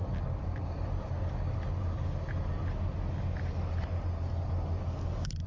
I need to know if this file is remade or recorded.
recorded